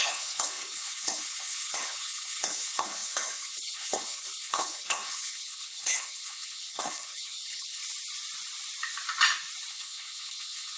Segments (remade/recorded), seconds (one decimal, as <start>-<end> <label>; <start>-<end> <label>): 0.0-7.8 remade; 7.8-9.7 recorded; 9.7-10.8 remade

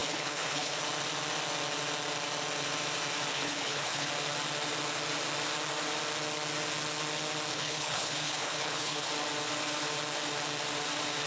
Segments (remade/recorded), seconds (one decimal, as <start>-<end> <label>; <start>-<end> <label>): 0.0-0.8 remade; 0.8-3.3 recorded; 3.3-4.1 remade; 4.1-7.5 recorded; 7.5-9.1 remade; 9.1-11.3 recorded